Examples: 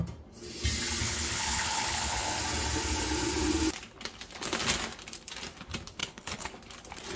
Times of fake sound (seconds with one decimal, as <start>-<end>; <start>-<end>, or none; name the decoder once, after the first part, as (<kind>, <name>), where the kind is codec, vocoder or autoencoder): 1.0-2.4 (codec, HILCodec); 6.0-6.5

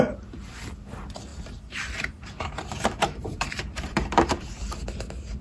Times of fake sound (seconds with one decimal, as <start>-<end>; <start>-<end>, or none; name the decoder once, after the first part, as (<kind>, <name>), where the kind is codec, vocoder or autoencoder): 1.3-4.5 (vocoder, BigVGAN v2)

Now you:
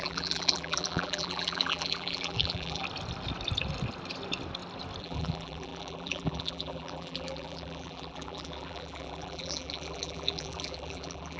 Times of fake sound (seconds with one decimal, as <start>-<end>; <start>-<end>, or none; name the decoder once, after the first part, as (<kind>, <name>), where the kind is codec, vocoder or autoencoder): 0.0-2.8 (vocoder, BigVGAN v2); 5.0-11.4

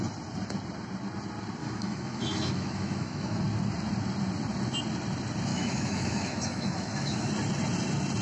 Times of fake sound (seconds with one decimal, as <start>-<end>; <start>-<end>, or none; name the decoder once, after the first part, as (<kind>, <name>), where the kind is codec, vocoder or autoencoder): 1.6-3.4 (autoencoder, DAC-VAE); 5.5-7.3